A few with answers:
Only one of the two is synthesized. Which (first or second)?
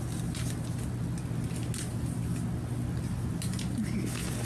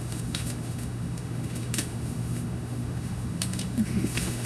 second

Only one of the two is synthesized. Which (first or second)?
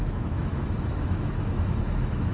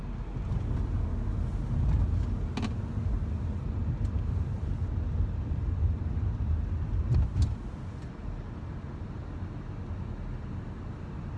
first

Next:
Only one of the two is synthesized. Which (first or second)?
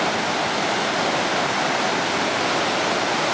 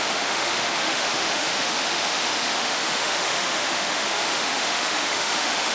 second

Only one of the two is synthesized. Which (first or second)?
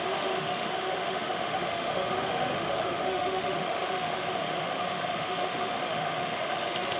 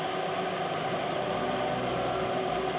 first